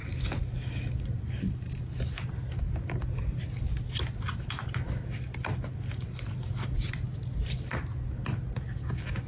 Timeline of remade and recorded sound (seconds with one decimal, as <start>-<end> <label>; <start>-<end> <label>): 0.0-9.3 recorded